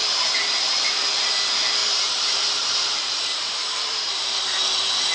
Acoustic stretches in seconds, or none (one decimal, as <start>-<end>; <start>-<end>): 1.3-1.8; 4.6-5.1